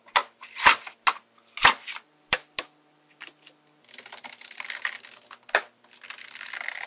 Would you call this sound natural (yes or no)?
yes